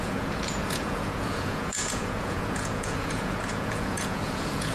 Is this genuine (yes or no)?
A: no